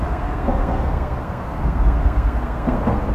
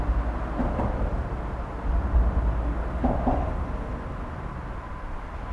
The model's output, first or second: first